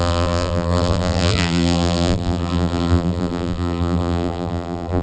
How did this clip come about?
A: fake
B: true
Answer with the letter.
A